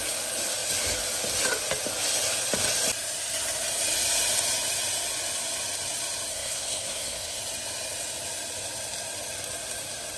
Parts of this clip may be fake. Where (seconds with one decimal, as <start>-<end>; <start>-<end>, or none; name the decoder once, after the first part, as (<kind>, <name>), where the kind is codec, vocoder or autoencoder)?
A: 6.3-7.4 (codec, SNAC)

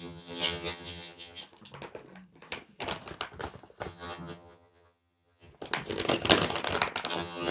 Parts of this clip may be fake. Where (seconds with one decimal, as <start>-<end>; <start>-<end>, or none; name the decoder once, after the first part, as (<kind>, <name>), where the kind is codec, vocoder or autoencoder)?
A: 0.0-1.4 (vocoder, HiFi-GAN); 3.9-5.5; 7.1-7.5

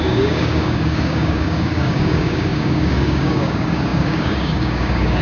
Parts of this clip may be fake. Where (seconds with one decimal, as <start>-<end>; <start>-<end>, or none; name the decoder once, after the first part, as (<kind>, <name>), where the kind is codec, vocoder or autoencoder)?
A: 0.0-5.2 (codec, DAC)

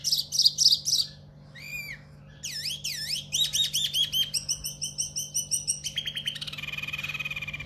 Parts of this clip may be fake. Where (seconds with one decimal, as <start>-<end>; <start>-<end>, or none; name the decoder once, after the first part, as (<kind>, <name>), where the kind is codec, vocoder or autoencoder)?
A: none

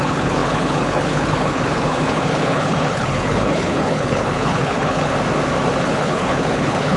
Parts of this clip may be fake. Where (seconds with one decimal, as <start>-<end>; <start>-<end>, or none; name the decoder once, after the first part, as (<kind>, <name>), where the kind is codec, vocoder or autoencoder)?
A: 0.0-5.1 (codec, HILCodec); 5.8-7.0